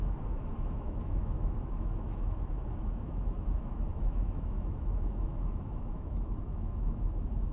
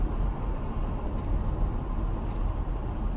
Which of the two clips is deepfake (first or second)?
first